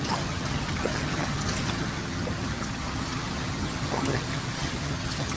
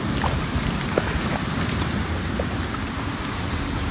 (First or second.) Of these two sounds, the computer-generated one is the first